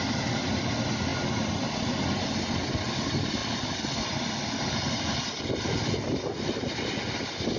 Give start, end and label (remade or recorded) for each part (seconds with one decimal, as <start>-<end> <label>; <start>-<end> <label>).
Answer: 0.0-7.6 recorded